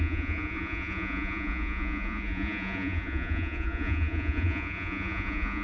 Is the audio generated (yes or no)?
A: yes